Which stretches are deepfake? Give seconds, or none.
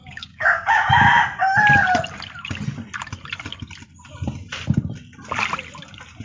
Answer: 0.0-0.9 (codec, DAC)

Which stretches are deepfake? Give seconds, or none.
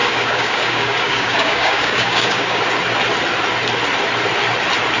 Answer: 0.0-2.6 (codec, DAC)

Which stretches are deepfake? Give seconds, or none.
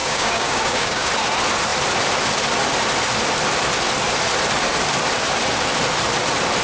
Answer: 0.0-1.1 (codec, DAC)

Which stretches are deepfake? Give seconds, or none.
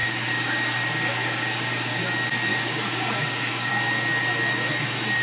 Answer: 0.0-2.0 (codec, DAC); 2.5-3.7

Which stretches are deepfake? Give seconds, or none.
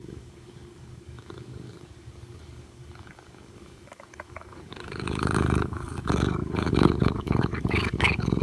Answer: 0.0-8.4 (codec, DAC)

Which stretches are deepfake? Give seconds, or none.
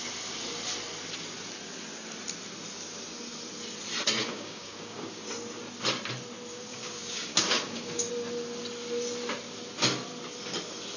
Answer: 4.2-5.2 (codec, DAC); 6.7-8.1